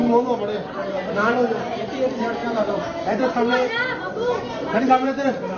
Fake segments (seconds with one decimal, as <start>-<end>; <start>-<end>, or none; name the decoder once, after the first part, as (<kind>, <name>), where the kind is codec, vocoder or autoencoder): 1.6-5.6 (vocoder, BigVGAN v2)